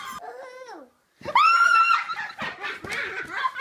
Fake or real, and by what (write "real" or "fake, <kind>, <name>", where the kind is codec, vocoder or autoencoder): real